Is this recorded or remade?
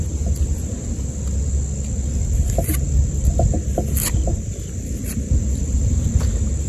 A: recorded